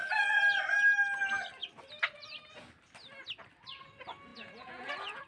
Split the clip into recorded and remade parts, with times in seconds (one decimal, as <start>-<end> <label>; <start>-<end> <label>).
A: 0.0-4.3 recorded; 4.3-5.3 remade